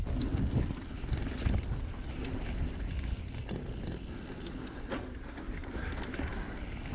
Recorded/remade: recorded